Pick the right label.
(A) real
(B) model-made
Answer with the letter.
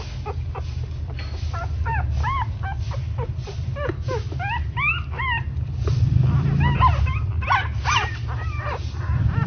A